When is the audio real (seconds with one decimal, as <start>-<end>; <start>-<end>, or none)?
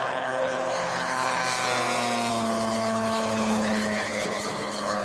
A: 1.4-2.3